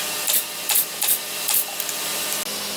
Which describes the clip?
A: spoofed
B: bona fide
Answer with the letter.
B